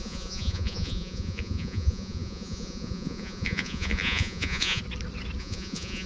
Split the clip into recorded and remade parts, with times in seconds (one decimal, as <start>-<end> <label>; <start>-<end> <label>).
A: 0.0-4.8 remade; 4.8-5.4 recorded; 5.4-6.1 remade